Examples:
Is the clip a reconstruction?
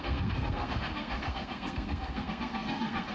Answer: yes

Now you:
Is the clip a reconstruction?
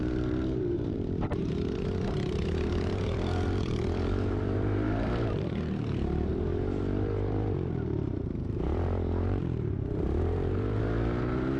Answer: yes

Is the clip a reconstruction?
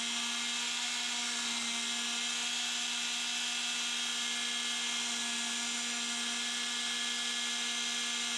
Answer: no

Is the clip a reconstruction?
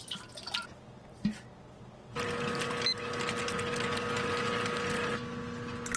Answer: no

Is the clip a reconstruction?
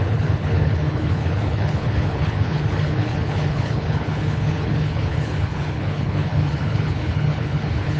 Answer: yes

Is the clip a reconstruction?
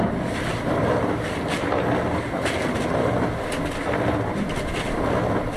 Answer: no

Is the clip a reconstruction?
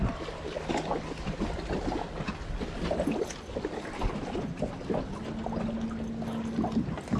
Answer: no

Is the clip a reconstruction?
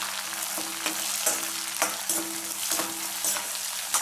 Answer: no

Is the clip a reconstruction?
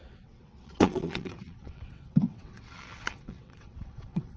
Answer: yes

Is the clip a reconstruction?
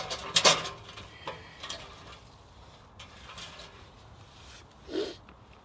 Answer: no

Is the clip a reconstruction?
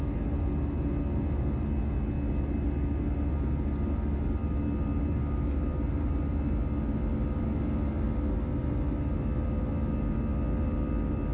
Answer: no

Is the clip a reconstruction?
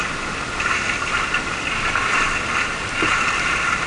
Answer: no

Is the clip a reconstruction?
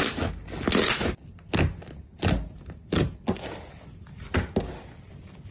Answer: no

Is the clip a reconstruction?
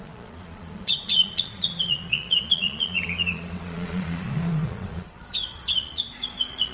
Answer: yes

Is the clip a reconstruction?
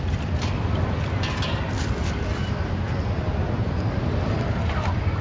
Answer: no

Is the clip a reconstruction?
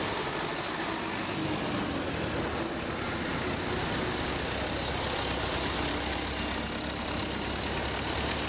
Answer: no